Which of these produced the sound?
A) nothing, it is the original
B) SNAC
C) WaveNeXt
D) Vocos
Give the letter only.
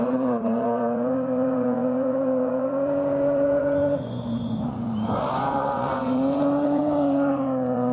D